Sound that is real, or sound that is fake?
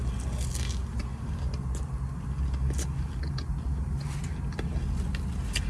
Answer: real